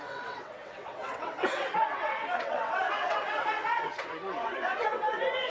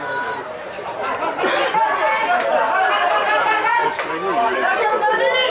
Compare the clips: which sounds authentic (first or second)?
second